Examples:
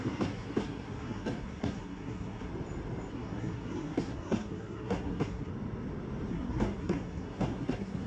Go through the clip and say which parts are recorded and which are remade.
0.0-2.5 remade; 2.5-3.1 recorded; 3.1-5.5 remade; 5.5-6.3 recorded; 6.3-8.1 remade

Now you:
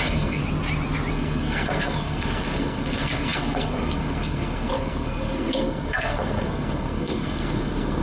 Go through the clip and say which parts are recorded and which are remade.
0.0-0.4 remade; 0.4-1.1 recorded; 1.1-8.0 remade

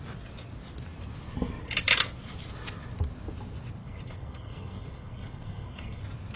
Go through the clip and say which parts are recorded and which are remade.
0.0-3.8 recorded; 3.8-6.0 remade; 6.0-6.4 recorded

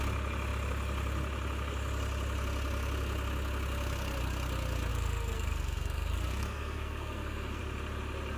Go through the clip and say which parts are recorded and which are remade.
0.0-4.9 recorded; 4.9-7.6 remade; 7.6-8.4 recorded

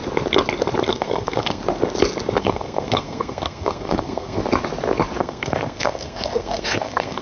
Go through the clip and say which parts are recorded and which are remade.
0.0-0.9 recorded; 0.9-1.6 remade; 1.6-2.4 recorded; 2.4-4.4 remade; 4.4-5.2 recorded; 5.2-7.2 remade